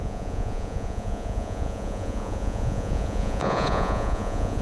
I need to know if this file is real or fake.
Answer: fake